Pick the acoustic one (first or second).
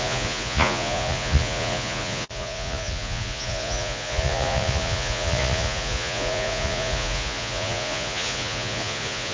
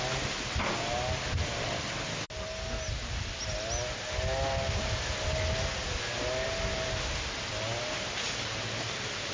second